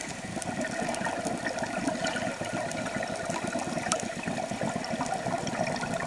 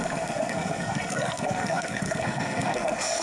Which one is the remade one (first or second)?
second